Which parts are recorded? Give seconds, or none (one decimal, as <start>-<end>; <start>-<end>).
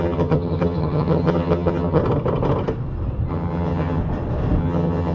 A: 2.0-3.3; 4.0-4.6